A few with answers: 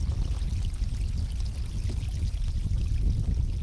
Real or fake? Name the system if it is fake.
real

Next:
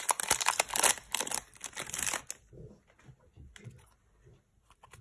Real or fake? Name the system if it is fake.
real